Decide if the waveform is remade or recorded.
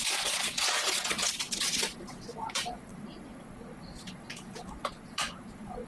remade